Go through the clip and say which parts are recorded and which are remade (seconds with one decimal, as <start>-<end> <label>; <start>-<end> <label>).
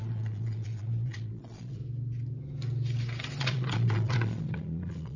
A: 0.0-1.8 remade; 1.8-3.4 recorded; 3.4-5.2 remade